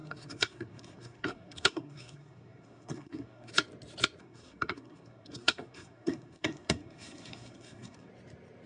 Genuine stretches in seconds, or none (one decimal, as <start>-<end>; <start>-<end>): 3.5-4.2; 8.1-8.7